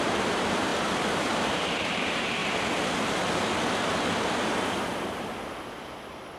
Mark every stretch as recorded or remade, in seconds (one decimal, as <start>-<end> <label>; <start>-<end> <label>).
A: 0.0-0.7 remade; 0.7-1.5 recorded; 1.5-2.4 remade; 2.4-6.4 recorded